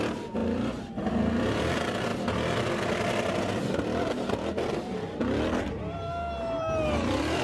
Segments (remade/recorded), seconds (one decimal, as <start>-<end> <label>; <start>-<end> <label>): 0.0-7.4 recorded

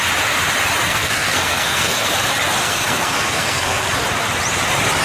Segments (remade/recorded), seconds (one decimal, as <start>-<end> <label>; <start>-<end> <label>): 0.0-0.9 recorded; 0.9-2.1 remade; 2.1-2.6 recorded; 2.6-3.9 remade; 3.9-5.0 recorded

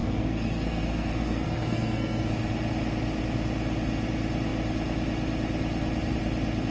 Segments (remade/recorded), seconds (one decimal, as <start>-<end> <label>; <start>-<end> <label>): 0.0-2.3 remade; 2.3-6.7 recorded

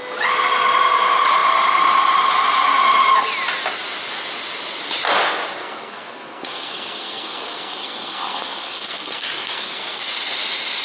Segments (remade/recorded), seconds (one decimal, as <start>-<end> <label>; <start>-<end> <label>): 0.0-5.6 recorded; 5.6-10.0 remade; 10.0-10.8 recorded

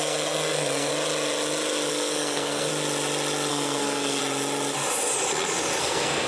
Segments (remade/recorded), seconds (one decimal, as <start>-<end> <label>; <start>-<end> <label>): 0.0-0.9 remade; 0.9-1.9 recorded; 1.9-2.7 remade; 2.7-3.5 recorded; 3.5-4.2 remade; 4.2-5.8 recorded; 5.8-6.3 remade

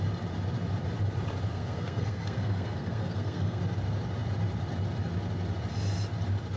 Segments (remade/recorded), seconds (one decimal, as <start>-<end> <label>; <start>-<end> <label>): 0.0-1.5 recorded; 1.5-3.6 remade; 3.6-6.6 recorded

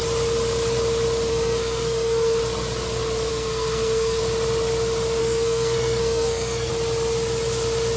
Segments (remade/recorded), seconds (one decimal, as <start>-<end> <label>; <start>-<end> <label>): 0.0-1.3 recorded; 1.3-2.4 remade; 2.4-3.3 recorded; 3.3-4.2 remade; 4.2-5.2 recorded; 5.2-6.7 remade; 6.7-8.0 recorded

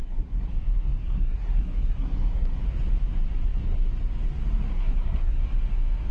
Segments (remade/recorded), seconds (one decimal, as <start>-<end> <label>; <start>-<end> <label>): 0.0-0.5 remade; 0.5-1.0 recorded; 1.0-2.6 remade; 2.6-4.7 recorded; 4.7-5.4 remade; 5.4-6.1 recorded